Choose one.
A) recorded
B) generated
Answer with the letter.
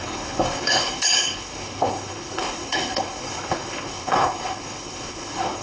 B